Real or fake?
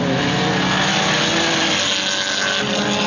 real